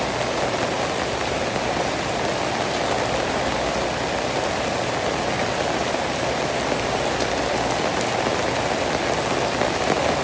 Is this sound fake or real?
real